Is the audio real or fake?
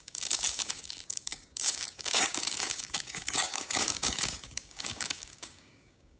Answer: fake